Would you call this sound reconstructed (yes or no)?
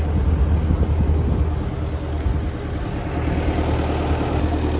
no